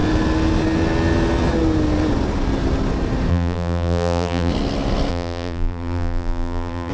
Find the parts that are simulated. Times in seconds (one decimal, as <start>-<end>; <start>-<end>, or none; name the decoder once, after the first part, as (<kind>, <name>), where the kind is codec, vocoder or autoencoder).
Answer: 3.3-4.5 (vocoder, BigVGAN v2); 5.1-6.9